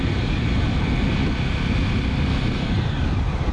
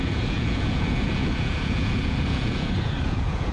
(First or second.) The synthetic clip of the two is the second